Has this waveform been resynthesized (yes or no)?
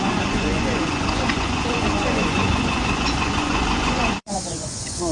yes